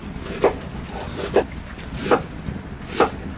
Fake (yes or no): no